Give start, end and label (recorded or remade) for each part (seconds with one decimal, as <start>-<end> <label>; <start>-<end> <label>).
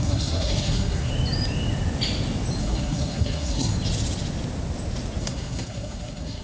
0.0-1.1 remade; 1.1-2.6 recorded; 2.6-3.7 remade; 3.7-5.2 recorded; 5.2-6.4 remade